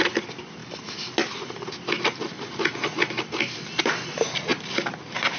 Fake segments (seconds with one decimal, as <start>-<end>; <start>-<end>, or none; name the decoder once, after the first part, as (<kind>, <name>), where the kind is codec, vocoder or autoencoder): none